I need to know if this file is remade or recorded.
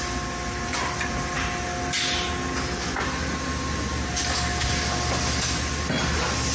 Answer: recorded